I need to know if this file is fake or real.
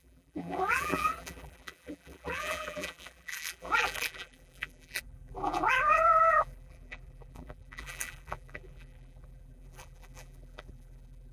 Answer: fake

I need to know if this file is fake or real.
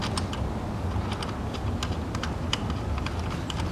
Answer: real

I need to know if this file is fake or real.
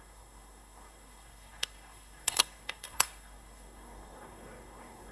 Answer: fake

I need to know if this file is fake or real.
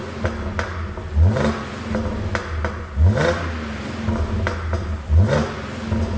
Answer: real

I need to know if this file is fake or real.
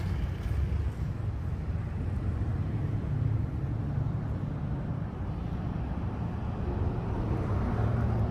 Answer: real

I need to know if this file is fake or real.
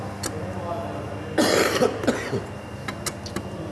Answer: real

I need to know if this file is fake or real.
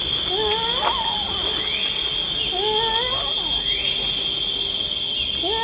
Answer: real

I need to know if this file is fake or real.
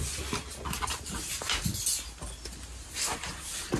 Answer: real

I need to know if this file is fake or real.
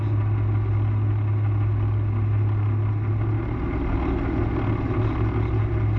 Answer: real